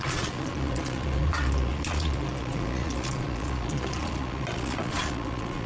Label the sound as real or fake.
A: fake